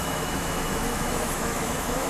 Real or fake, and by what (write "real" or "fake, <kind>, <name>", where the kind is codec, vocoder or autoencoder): fake, autoencoder, DAC-VAE